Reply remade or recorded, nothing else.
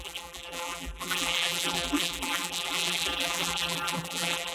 remade